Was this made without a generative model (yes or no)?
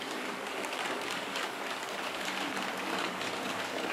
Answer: no